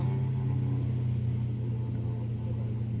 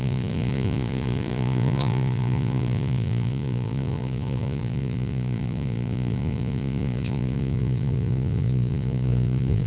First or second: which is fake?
second